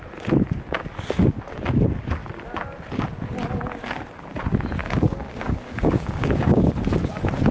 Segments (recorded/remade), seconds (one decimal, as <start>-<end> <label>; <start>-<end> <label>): 0.0-4.8 recorded; 4.8-6.7 remade; 6.7-7.5 recorded